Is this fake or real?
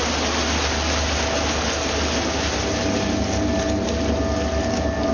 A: real